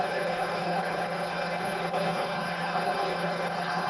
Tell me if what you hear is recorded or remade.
remade